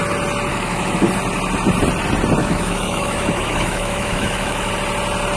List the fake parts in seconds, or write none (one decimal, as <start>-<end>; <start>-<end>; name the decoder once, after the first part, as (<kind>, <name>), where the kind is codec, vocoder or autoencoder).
0.5-1.1 (autoencoder, DAC-VAE); 2.4-4.7